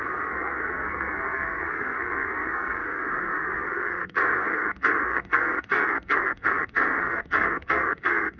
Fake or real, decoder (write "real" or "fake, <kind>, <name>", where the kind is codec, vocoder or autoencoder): fake, codec, SNAC